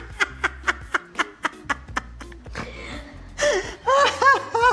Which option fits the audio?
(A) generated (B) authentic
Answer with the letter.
B